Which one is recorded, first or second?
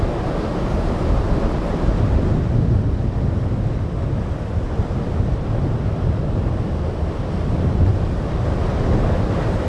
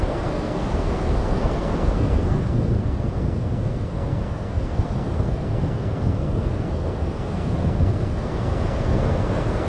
first